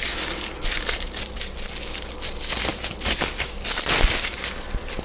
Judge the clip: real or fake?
real